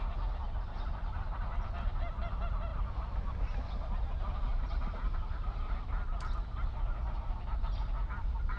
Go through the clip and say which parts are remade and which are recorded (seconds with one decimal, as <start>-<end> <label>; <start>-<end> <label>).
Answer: 0.0-8.6 recorded